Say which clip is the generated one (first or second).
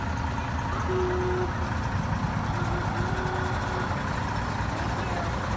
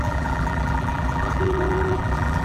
second